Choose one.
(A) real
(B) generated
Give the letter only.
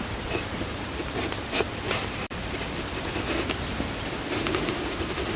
A